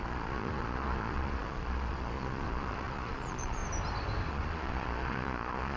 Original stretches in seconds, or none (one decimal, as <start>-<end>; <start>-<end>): 3.6-4.3